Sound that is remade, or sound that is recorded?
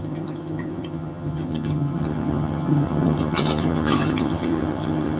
remade